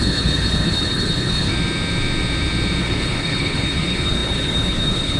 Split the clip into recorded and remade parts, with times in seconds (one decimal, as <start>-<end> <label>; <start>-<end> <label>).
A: 0.0-1.5 remade; 1.5-2.8 recorded; 2.8-5.2 remade